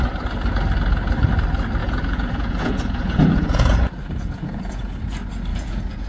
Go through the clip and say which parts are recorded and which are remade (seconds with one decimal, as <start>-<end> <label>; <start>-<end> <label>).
0.0-1.8 recorded; 1.8-5.0 remade; 5.0-5.5 recorded; 5.5-6.1 remade